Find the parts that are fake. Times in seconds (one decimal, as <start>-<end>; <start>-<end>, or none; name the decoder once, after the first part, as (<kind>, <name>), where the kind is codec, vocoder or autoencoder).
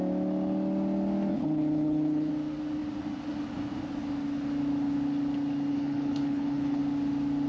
1.3-2.3 (codec, HILCodec); 5.7-6.8